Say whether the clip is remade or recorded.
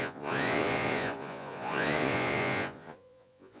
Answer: remade